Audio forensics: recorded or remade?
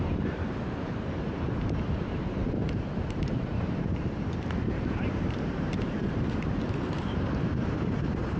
remade